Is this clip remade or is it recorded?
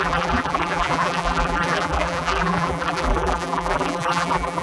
remade